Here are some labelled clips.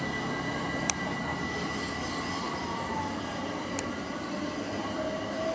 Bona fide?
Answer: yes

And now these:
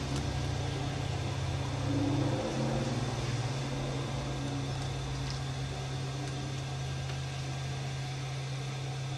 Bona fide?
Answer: yes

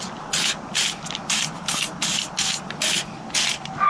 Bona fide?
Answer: yes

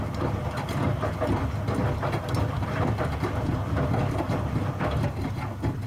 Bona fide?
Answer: yes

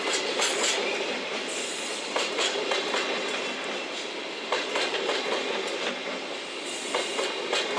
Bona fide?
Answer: yes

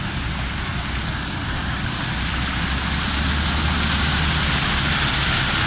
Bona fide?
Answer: yes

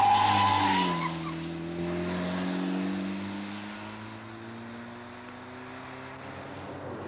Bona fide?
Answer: yes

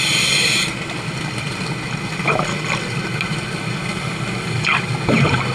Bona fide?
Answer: yes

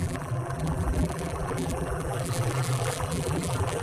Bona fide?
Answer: no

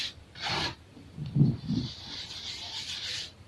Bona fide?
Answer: no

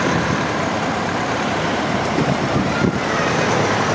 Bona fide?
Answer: no